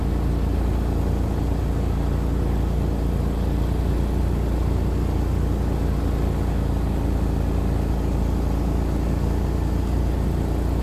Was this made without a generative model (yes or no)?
yes